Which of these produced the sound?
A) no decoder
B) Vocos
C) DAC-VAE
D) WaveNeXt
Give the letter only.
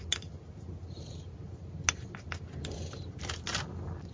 A